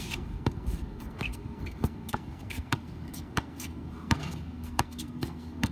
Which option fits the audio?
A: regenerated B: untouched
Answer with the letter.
A